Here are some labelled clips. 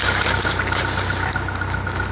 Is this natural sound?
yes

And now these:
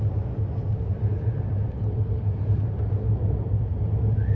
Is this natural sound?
yes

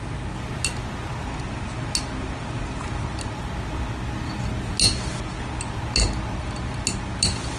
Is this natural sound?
yes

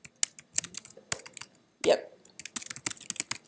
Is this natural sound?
yes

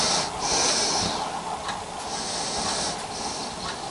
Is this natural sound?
yes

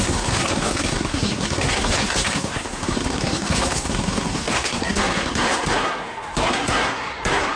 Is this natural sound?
no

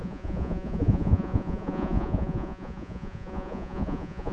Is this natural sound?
no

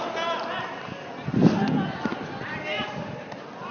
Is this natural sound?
yes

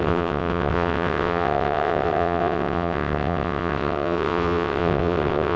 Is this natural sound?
no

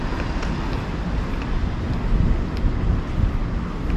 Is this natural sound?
yes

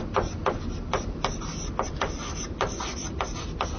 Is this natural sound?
yes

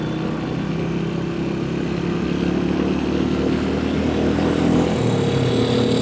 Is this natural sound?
yes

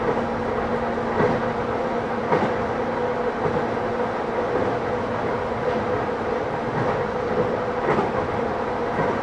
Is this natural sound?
yes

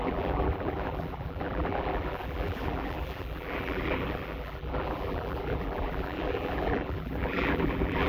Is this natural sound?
no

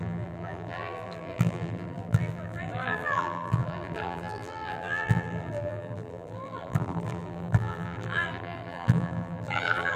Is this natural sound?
no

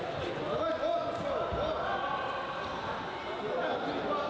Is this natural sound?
yes